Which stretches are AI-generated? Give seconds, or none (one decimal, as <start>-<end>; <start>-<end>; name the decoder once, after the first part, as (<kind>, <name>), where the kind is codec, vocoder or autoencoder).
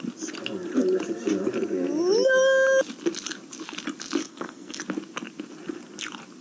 4.2-4.8 (codec, SNAC)